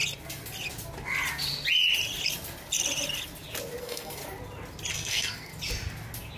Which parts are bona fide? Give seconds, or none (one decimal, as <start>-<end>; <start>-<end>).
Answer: 0.0-3.8; 4.2-4.9; 5.5-6.4